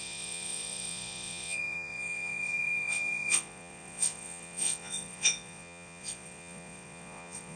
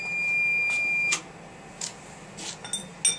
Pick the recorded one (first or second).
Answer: second